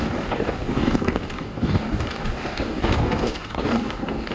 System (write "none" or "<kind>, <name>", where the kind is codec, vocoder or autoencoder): codec, DAC